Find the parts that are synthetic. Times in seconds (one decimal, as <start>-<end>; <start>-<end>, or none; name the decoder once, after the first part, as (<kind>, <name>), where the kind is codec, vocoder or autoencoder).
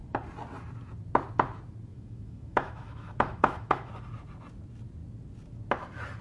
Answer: 1.9-3.9 (autoencoder, DAC-VAE)